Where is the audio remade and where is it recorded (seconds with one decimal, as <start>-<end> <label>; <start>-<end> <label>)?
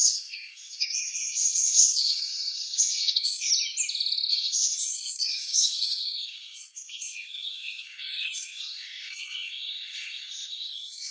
0.0-3.5 remade; 3.5-4.3 recorded; 4.3-11.1 remade